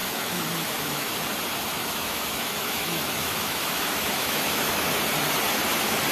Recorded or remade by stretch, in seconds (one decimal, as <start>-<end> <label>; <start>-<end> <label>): 0.0-1.1 remade; 1.1-1.7 recorded; 1.7-4.9 remade; 4.9-6.1 recorded